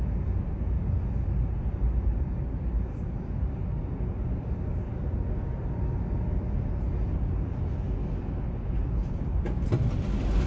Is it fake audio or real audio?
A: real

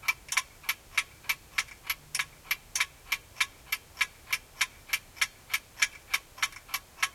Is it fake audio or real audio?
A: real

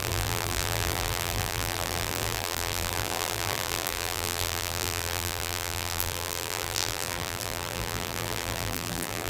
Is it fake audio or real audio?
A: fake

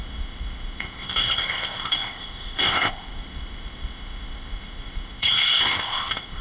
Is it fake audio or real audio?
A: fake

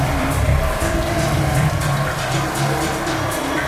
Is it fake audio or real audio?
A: fake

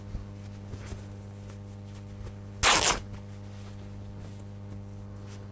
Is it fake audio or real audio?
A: real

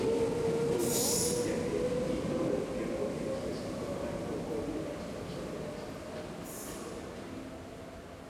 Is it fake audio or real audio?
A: real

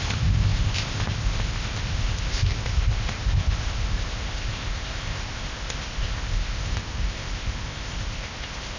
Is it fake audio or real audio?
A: fake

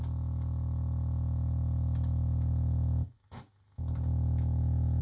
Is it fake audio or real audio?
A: real